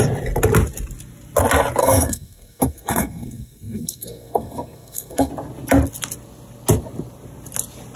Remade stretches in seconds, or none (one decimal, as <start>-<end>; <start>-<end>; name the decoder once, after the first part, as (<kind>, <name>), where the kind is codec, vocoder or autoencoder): 1.8-5.3 (codec, SNAC)